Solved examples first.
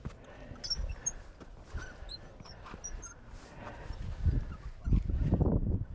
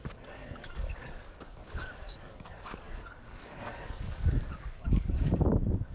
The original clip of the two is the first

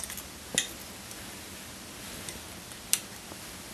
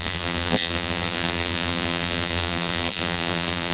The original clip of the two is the first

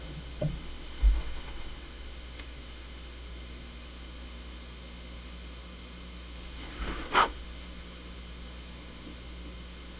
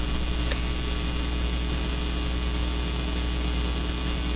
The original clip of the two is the second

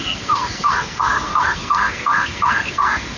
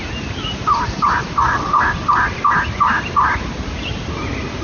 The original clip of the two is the second